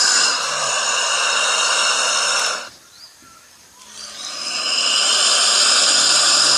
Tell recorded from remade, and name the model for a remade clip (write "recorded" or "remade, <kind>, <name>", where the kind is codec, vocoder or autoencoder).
remade, vocoder, BigVGAN v2